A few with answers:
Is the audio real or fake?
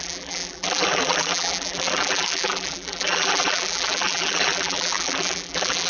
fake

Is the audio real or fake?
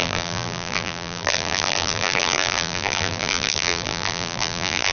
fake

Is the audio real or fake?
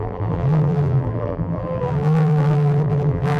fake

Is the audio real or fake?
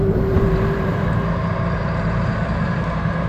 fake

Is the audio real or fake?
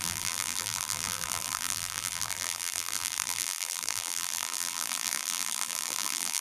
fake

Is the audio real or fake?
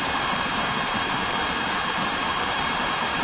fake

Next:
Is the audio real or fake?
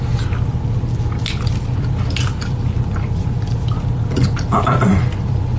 fake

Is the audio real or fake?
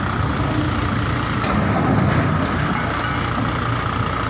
real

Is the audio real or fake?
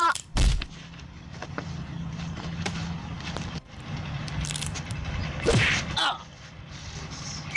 fake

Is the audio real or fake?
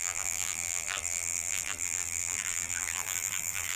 fake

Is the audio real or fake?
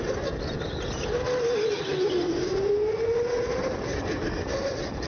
real